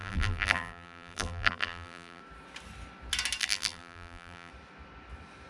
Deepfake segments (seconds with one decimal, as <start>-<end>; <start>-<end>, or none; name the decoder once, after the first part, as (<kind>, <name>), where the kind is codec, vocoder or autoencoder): 0.0-2.2 (vocoder, BigVGAN v2); 3.4-4.5